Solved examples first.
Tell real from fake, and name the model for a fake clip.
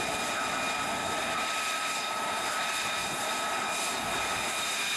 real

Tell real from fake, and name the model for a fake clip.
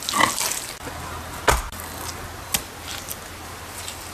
real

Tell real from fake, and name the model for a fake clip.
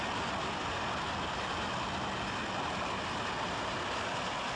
real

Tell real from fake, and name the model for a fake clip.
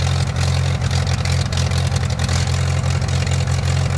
real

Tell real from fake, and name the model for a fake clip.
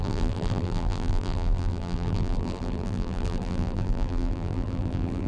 fake, vocoder, BigVGAN v2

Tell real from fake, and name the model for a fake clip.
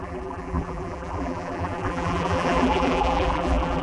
fake, vocoder, BigVGAN v2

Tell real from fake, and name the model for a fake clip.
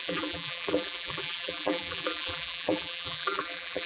fake, vocoder, BigVGAN v2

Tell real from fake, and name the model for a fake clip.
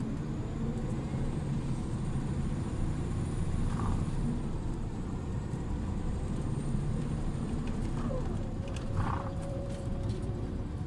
fake, vocoder, BigVGAN v2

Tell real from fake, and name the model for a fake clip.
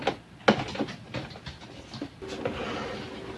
real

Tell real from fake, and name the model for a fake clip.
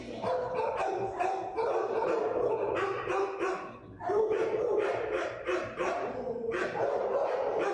fake, vocoder, BigVGAN v2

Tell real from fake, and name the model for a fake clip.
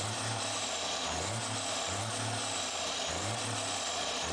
fake, vocoder, BigVGAN v2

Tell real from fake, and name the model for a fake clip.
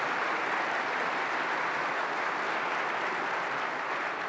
real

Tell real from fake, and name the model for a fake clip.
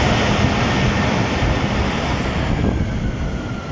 real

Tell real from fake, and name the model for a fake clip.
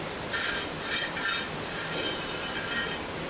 fake, vocoder, BigVGAN v2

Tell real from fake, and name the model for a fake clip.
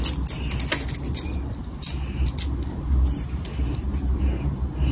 real